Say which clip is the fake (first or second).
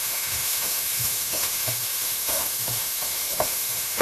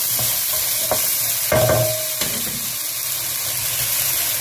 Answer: first